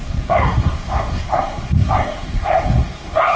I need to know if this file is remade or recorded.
remade